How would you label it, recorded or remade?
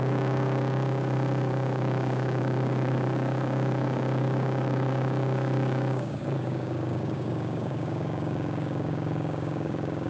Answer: remade